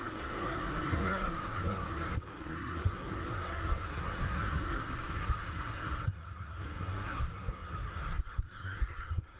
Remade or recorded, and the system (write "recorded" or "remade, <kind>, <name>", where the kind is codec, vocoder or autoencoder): remade, codec, SNAC